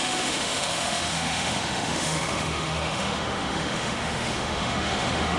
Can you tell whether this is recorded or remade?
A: remade